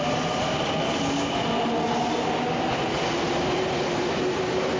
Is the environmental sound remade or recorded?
recorded